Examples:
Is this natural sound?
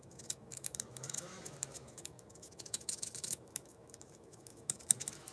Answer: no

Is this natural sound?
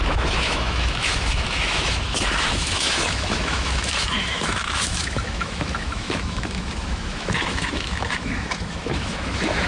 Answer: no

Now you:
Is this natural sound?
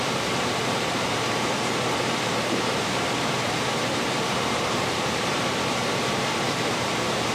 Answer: no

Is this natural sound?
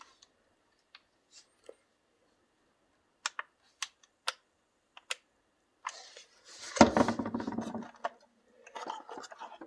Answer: yes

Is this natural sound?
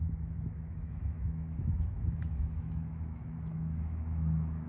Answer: no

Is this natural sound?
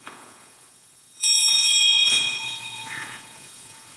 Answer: no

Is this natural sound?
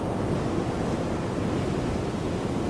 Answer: yes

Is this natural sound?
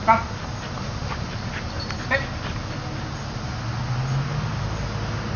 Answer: yes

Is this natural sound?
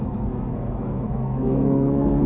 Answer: no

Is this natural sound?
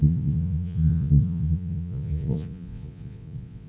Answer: no